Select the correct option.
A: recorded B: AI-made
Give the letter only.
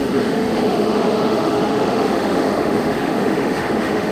B